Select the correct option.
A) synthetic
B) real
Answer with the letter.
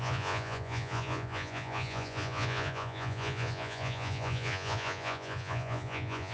A